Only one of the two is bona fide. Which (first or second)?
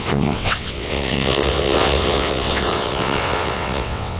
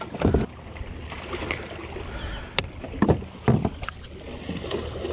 second